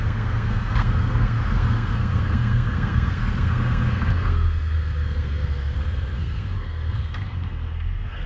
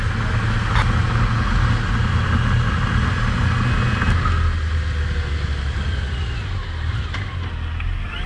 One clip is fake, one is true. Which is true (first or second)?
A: second